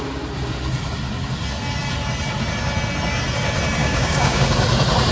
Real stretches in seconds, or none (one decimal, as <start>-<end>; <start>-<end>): 0.0-3.8; 4.5-5.1